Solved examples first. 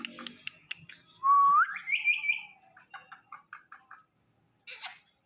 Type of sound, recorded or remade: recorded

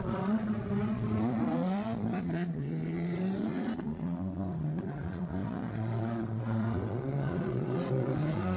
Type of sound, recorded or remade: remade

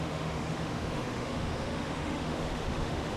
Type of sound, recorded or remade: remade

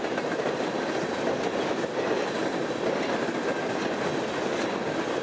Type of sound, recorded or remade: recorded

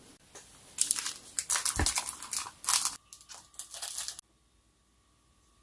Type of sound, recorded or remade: recorded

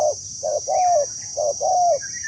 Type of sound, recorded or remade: recorded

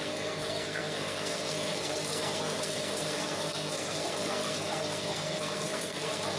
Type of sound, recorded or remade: remade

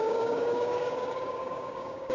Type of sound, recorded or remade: remade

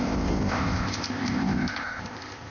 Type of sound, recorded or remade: remade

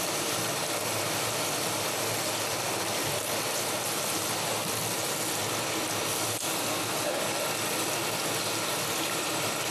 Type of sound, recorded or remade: recorded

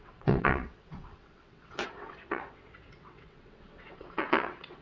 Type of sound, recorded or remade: remade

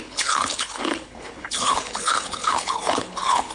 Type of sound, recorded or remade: remade